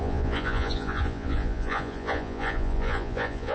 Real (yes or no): no